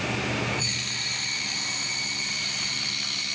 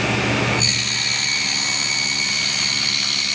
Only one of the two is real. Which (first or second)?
second